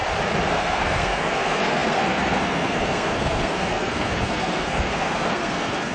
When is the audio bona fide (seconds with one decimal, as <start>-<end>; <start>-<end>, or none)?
0.0-0.5